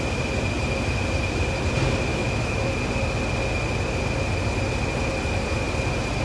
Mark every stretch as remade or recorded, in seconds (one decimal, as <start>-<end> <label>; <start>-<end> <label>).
0.0-2.1 recorded; 2.1-2.7 remade; 2.7-6.2 recorded